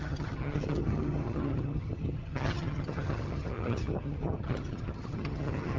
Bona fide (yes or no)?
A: no